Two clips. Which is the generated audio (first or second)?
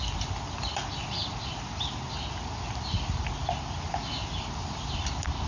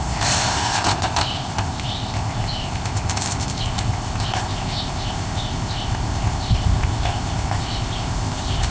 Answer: second